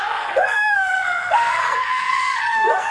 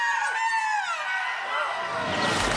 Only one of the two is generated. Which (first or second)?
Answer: first